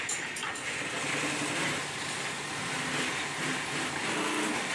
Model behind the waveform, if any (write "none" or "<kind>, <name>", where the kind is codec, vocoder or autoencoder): none